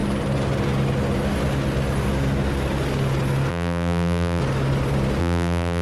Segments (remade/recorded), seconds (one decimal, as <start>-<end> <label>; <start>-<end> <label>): 0.0-3.5 recorded; 3.5-4.4 remade; 4.4-5.2 recorded; 5.2-5.8 remade